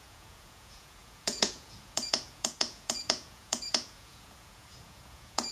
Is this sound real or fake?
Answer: fake